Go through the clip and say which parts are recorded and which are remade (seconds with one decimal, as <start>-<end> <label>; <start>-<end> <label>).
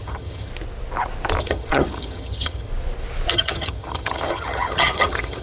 0.0-0.5 remade; 0.5-1.4 recorded; 1.4-2.7 remade; 2.7-3.3 recorded; 3.3-5.4 remade